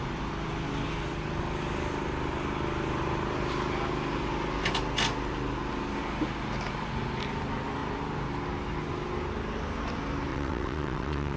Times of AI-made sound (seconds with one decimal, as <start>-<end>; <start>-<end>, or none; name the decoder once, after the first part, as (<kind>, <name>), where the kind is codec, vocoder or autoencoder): 10.3-11.4 (vocoder, WaveNeXt)